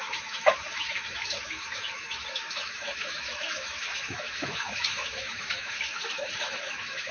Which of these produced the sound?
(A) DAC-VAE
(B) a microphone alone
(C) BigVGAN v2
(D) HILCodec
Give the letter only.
A